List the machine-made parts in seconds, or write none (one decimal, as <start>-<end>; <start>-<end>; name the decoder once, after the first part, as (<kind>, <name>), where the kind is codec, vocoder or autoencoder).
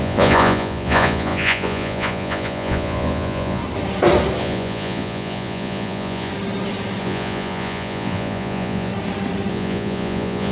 0.0-3.6 (vocoder, Vocos); 4.4-6.3; 7.0-8.9; 9.5-10.5